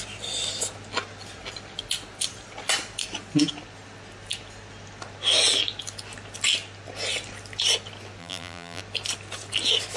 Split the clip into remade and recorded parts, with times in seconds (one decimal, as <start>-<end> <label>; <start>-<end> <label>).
0.0-8.2 recorded; 8.2-8.8 remade; 8.8-10.0 recorded